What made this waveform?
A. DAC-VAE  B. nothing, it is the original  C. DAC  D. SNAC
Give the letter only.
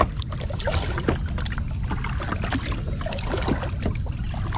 B